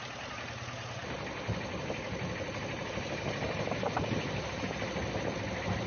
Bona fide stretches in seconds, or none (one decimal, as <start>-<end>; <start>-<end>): 0.0-5.9